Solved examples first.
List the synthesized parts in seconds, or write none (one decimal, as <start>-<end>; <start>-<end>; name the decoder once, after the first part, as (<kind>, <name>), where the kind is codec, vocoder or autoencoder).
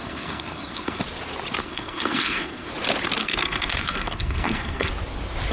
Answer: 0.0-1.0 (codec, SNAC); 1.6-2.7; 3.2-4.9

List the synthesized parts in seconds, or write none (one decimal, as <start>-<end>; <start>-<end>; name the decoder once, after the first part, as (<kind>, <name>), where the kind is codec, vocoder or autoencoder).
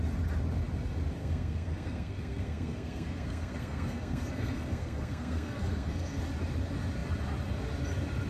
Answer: 1.2-6.2 (codec, SNAC)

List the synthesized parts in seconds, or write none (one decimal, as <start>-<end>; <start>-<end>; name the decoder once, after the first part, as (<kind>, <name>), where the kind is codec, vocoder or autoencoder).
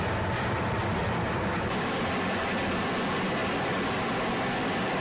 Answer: none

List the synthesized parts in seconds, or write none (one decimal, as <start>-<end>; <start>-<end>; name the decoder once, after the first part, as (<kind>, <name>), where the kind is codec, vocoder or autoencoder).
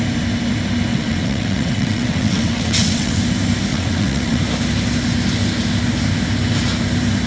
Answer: 0.9-3.2 (vocoder, WaveNeXt); 3.7-4.4